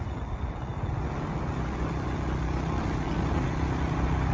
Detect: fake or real real